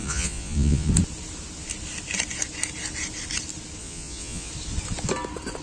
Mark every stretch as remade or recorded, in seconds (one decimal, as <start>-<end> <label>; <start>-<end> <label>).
0.0-0.9 remade; 0.9-3.8 recorded; 3.8-4.5 remade; 4.5-5.6 recorded